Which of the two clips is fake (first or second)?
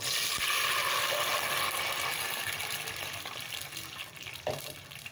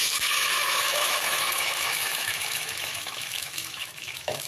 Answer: second